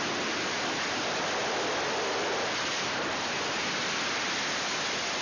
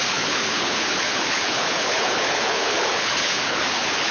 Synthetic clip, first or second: second